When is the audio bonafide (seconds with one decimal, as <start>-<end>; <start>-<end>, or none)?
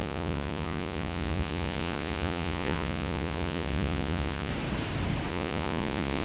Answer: 4.5-5.3